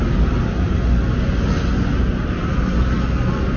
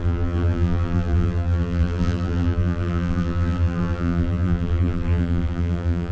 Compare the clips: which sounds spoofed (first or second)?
second